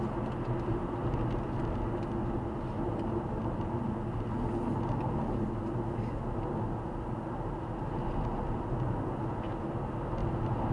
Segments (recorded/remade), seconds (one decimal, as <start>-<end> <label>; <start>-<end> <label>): 0.0-10.7 recorded